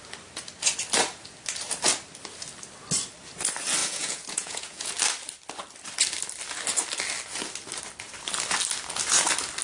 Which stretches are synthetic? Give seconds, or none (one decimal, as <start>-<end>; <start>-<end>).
3.8-4.9